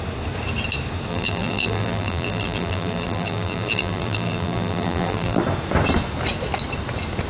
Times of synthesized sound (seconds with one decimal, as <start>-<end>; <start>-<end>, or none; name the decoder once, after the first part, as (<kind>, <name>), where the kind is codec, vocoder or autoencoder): 1.1-5.4 (vocoder, BigVGAN v2)